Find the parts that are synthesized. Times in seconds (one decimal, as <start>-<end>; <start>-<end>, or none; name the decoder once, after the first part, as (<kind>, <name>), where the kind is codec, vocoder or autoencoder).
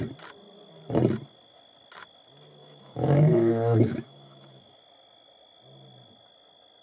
2.6-4.8 (autoencoder, DAC-VAE)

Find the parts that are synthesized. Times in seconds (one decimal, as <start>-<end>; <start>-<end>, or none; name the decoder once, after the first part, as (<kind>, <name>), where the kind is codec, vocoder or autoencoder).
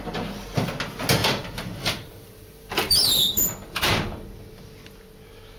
1.2-4.6 (vocoder, BigVGAN v2)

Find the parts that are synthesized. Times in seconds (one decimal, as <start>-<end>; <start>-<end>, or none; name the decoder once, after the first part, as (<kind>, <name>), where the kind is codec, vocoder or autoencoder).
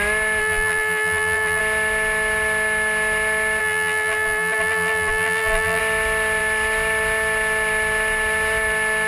0.4-1.6 (vocoder, BigVGAN v2); 3.6-5.8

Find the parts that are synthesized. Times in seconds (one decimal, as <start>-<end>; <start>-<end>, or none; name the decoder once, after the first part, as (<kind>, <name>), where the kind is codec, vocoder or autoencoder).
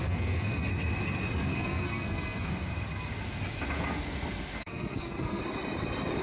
0.0-0.7 (codec, SNAC); 1.5-2.5; 4.6-5.4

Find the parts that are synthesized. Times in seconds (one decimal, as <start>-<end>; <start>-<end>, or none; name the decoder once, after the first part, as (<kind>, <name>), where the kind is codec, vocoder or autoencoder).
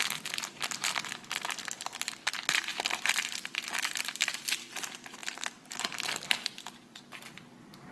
0.0-7.9 (vocoder, BigVGAN v2)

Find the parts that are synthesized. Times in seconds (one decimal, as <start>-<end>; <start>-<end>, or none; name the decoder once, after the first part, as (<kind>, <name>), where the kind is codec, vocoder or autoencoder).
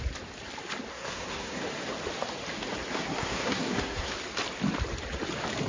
0.9-1.6 (codec, SNAC); 2.9-4.1